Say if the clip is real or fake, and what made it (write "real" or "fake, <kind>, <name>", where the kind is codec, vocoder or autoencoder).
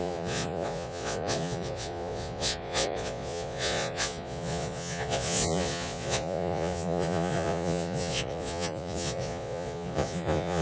fake, vocoder, Vocos